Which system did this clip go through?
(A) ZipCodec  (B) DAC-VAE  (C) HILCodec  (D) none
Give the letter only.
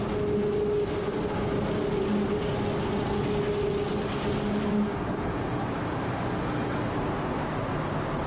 D